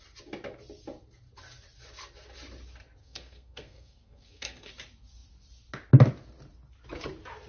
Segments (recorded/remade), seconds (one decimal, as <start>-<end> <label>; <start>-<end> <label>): 0.0-3.0 recorded; 3.0-4.7 remade; 4.7-7.5 recorded